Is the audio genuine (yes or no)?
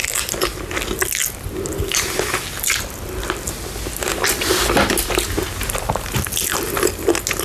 yes